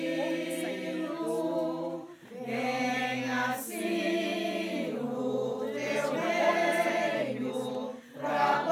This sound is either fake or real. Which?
real